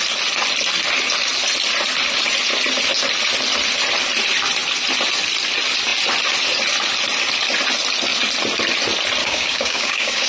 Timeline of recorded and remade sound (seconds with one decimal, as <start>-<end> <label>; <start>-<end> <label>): 0.0-9.2 recorded; 9.2-10.3 remade